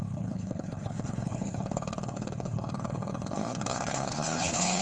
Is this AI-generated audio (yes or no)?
yes